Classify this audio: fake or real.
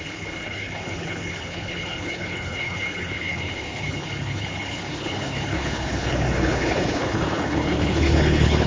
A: fake